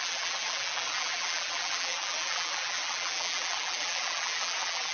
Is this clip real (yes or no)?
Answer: no